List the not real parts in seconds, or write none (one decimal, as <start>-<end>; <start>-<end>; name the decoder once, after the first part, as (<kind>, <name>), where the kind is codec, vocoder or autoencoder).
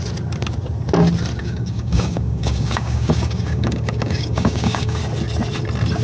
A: 1.4-5.0 (codec, DAC)